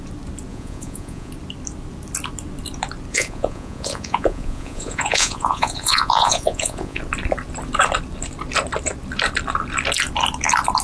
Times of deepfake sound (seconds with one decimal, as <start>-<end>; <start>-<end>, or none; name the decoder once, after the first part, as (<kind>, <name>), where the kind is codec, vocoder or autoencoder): 0.5-1.3 (vocoder, Vocos); 3.1-7.0